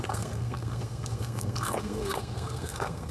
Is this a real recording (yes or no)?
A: no